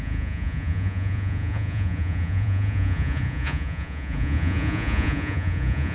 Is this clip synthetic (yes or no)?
yes